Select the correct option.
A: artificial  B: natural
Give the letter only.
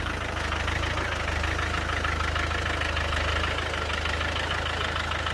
B